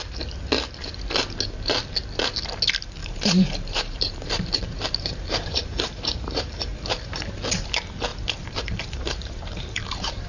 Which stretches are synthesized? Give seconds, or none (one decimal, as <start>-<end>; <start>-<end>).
3.0-7.2; 8.1-10.3